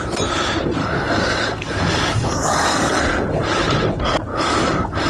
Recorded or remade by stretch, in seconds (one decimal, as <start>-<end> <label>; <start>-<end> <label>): 0.0-0.8 recorded; 0.8-3.0 remade; 3.0-4.3 recorded; 4.3-5.1 remade